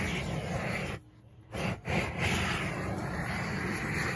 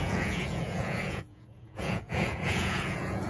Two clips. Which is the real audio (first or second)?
first